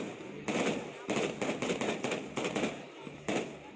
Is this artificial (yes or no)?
no